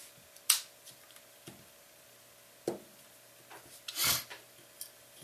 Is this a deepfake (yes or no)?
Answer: no